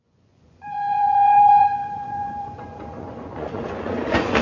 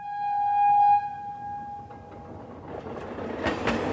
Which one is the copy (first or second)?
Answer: first